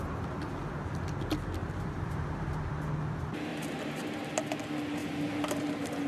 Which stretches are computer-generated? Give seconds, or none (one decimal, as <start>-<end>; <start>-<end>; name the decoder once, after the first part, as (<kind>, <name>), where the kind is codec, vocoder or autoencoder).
1.6-2.7 (vocoder, BigVGAN v2); 3.5-4.2; 5.0-6.1